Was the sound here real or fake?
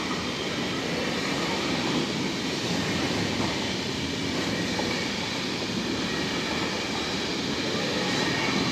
real